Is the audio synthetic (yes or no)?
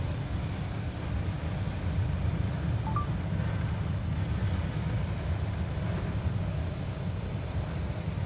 no